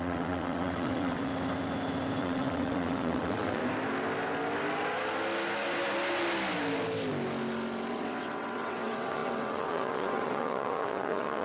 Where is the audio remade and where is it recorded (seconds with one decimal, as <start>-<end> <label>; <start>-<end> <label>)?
0.0-1.3 remade; 1.3-2.2 recorded; 2.2-3.6 remade; 3.6-7.9 recorded; 7.9-11.4 remade